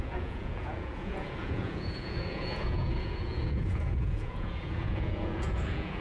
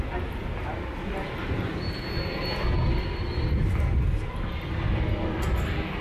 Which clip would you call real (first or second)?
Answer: second